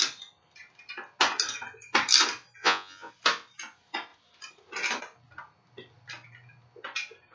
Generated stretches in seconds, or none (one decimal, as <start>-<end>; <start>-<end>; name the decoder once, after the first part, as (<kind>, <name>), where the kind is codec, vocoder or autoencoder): 2.6-3.1 (vocoder, Vocos)